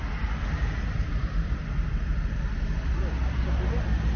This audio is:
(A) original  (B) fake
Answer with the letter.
A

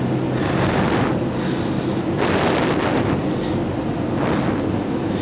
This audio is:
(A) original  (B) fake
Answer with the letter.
A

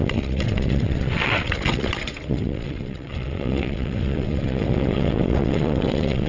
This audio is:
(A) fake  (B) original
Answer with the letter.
A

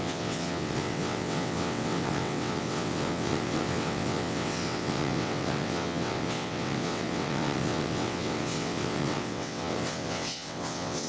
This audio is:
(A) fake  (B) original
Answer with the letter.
A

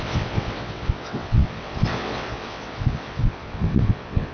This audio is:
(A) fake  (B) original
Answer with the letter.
A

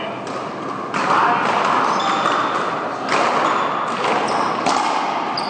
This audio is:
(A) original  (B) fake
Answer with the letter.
A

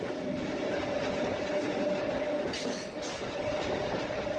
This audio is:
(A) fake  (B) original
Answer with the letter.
B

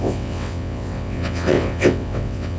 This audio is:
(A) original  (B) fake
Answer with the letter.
B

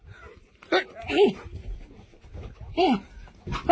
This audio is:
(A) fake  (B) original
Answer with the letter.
B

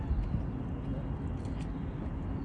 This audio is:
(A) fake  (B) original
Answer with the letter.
B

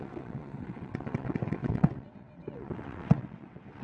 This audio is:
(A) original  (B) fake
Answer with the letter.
B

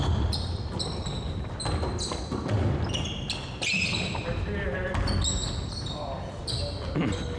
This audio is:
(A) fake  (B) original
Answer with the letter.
B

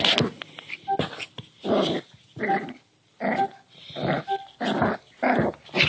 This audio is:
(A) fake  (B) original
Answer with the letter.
B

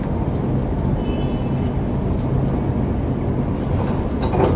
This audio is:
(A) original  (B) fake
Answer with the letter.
A